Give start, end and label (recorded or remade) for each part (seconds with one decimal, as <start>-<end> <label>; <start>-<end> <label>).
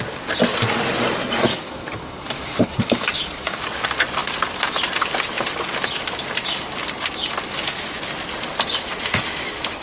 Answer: 0.0-1.5 recorded; 1.5-3.6 remade; 3.6-9.8 recorded